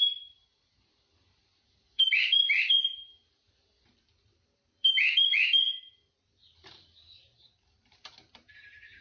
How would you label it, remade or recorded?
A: remade